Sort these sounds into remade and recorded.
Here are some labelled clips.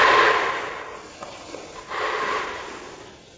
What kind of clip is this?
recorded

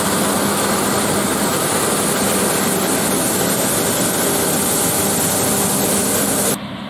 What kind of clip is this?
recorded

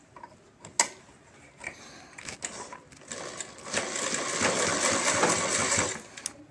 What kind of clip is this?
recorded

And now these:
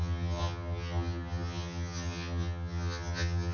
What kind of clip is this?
remade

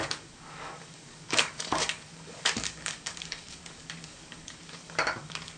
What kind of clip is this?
remade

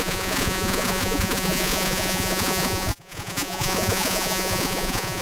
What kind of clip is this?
remade